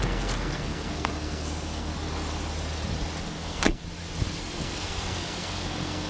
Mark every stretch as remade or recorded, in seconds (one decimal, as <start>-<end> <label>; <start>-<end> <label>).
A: 0.0-1.9 remade; 1.9-3.2 recorded; 3.2-3.8 remade; 3.8-4.4 recorded; 4.4-6.1 remade